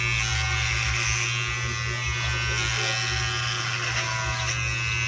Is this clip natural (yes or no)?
yes